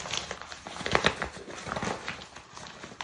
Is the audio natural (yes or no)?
yes